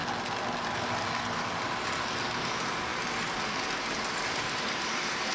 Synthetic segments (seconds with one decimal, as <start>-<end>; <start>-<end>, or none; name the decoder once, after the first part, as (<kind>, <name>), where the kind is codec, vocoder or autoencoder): 2.4-2.9 (vocoder, BigVGAN v2); 3.8-5.3